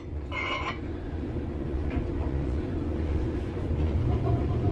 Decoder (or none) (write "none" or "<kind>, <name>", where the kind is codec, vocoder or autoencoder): vocoder, Vocos